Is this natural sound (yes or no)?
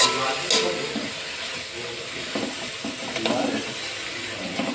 yes